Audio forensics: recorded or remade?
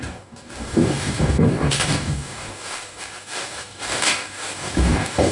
remade